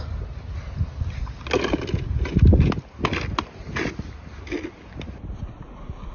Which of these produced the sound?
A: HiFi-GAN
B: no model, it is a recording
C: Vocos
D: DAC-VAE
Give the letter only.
B